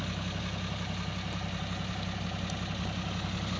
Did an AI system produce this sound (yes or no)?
no